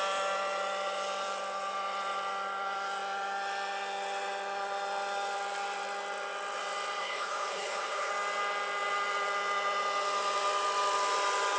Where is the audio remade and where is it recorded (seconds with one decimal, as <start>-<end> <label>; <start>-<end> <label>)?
0.0-7.0 recorded; 7.0-8.1 remade; 8.1-11.6 recorded